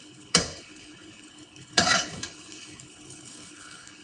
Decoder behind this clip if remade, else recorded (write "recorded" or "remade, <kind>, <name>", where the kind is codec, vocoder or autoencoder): remade, codec, HILCodec